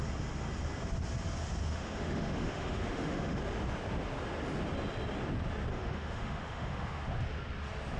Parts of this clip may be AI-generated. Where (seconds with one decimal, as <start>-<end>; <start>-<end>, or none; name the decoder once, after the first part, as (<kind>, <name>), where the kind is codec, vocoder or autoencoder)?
1.4-3.4 (autoencoder, DAC-VAE); 5.7-7.0